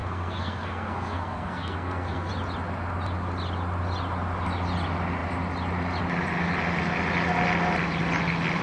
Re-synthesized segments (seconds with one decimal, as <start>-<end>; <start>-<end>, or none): 0.0-2.3